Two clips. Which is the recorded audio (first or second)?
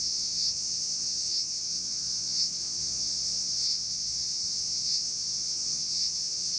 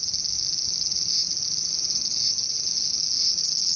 second